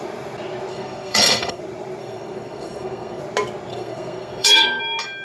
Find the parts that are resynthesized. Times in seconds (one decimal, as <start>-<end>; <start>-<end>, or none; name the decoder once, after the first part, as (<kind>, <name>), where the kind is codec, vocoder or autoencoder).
0.7-1.6 (codec, SNAC); 2.0-3.2; 3.7-4.8